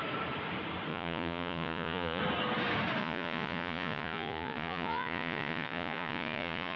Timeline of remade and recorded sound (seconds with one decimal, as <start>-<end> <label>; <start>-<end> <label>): 0.0-0.9 recorded; 0.9-2.2 remade; 2.2-3.0 recorded; 3.0-6.8 remade